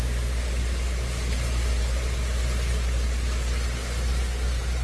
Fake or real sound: real